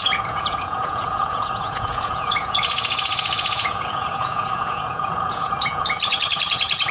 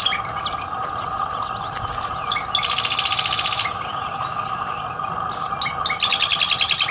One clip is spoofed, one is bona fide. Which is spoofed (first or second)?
first